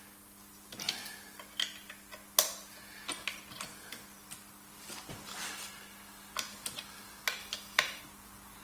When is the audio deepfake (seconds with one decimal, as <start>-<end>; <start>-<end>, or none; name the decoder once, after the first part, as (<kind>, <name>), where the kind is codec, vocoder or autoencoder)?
7.4-8.0 (autoencoder, DAC-VAE)